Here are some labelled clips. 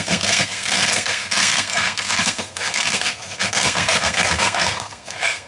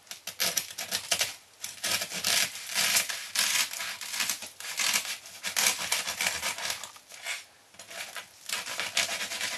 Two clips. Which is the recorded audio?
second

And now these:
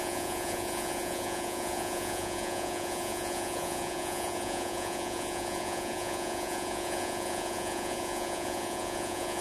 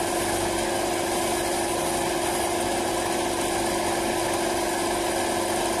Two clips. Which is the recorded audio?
second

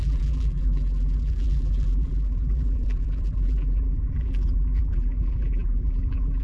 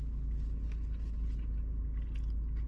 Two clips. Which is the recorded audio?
second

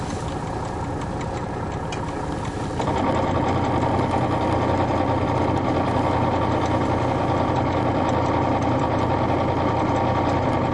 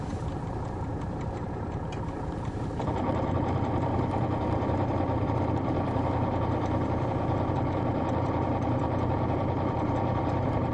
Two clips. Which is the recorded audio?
first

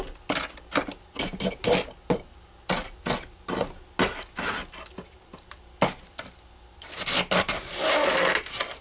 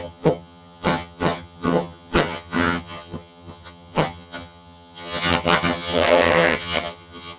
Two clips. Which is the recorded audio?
first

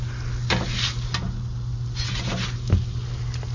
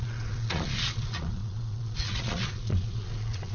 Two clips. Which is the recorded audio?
first